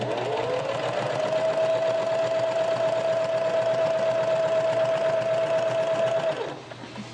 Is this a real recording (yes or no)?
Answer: yes